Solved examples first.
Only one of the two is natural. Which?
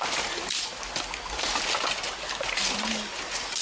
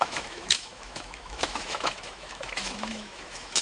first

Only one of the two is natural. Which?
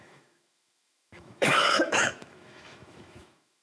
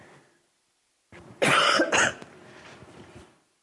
second